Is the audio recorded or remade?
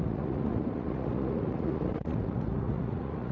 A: remade